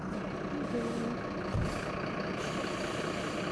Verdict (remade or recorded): recorded